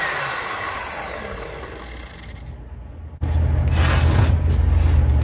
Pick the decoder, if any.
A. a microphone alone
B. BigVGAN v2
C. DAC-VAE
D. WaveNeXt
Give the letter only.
A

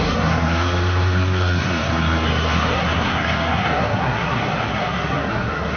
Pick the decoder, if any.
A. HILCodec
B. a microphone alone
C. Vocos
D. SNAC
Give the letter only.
D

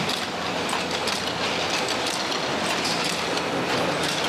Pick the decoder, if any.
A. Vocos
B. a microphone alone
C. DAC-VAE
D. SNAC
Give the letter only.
B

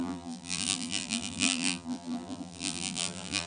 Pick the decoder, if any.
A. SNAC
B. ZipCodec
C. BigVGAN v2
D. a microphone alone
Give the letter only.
C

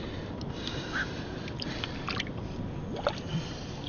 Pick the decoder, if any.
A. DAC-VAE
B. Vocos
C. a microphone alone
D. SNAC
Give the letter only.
C